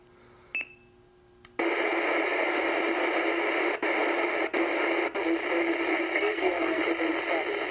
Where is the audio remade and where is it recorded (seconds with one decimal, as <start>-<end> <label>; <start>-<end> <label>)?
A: 0.0-5.9 recorded; 5.9-6.8 remade; 6.8-7.7 recorded